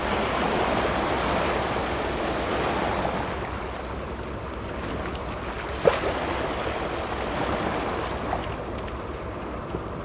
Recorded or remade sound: recorded